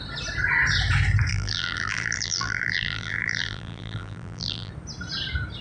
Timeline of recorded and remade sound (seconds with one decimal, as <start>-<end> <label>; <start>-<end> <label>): 0.0-1.3 recorded; 1.3-4.7 remade; 4.7-5.6 recorded